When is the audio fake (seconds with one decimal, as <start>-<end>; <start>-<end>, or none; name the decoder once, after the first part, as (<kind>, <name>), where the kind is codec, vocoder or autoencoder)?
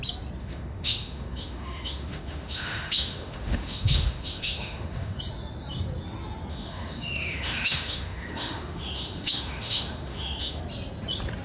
0.4-5.2 (autoencoder, DAC-VAE); 6.5-10.6